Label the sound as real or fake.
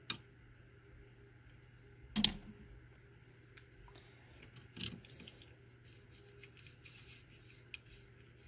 real